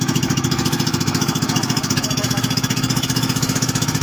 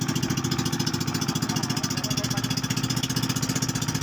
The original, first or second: second